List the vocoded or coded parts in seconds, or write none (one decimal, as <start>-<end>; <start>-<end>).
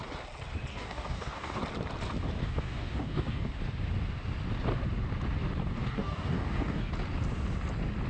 0.7-1.6; 2.4-3.6; 5.8-6.9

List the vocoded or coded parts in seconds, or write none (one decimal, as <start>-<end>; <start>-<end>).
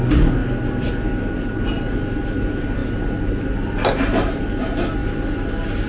0.4-0.9; 5.0-5.9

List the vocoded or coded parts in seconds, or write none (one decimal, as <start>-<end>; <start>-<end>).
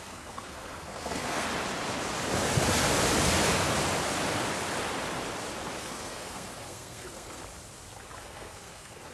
0.0-1.5; 5.8-7.4; 8.2-9.1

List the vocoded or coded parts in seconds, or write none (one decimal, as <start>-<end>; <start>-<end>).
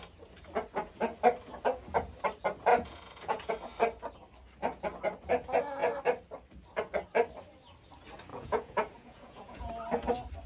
2.7-3.5; 8.3-9.7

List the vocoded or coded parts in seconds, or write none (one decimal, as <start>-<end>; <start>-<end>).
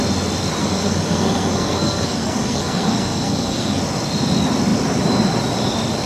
0.6-3.8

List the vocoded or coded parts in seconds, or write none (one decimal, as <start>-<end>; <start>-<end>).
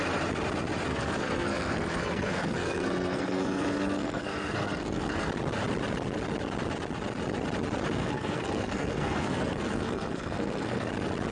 0.9-5.3; 8.0-10.9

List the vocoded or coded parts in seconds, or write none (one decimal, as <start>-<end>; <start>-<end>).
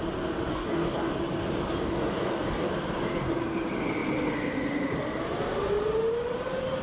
0.5-1.1; 1.8-2.7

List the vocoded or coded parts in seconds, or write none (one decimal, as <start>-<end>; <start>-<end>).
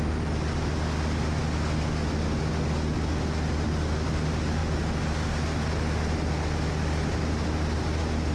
none